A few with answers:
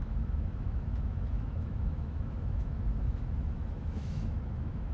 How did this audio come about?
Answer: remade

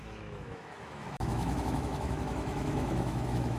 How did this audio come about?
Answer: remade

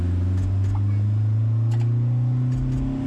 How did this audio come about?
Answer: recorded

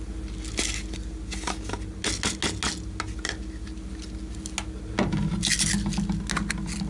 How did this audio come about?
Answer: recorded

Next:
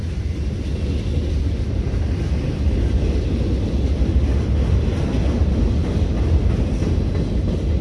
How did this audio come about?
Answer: recorded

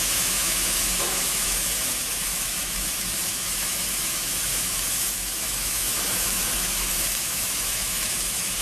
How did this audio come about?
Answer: remade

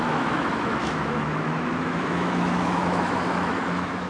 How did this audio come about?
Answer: remade